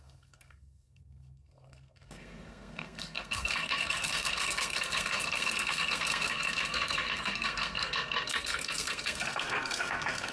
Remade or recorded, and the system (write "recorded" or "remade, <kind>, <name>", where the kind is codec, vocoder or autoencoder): remade, codec, SNAC